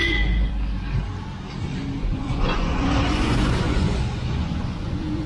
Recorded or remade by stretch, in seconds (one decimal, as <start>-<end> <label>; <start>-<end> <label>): 0.0-0.5 remade; 0.5-2.0 recorded; 2.0-5.3 remade